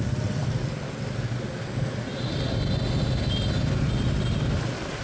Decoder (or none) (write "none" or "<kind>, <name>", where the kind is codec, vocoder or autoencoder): none